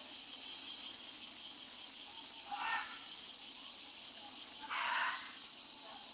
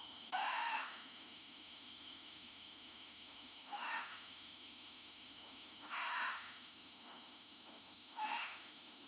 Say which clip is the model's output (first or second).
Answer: second